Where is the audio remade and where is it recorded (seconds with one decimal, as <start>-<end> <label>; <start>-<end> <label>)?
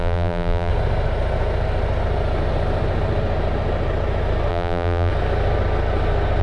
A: 0.0-0.7 remade; 0.7-4.5 recorded; 4.5-5.1 remade; 5.1-6.4 recorded